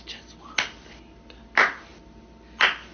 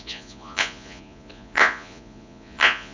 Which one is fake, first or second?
second